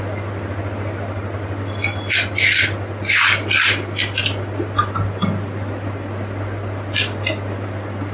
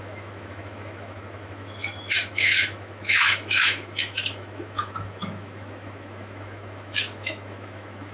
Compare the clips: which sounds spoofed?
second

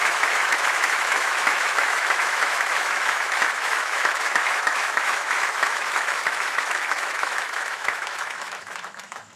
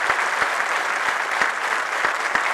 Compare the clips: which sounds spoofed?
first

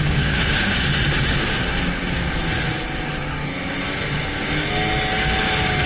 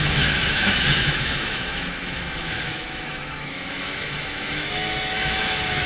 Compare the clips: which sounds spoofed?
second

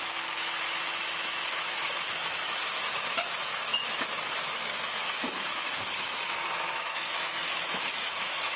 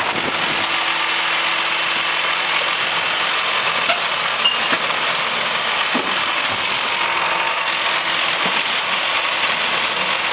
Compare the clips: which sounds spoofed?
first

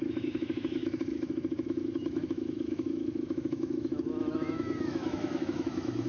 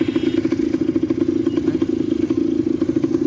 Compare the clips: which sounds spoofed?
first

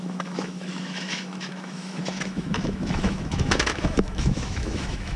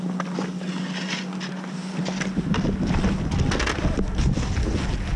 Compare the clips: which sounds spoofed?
first